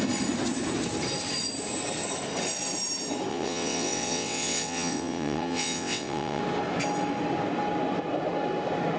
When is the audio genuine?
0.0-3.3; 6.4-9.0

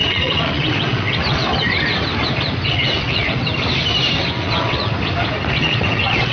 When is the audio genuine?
1.5-2.7; 3.4-4.3; 4.9-5.5

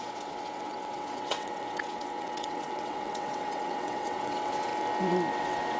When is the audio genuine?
4.7-5.3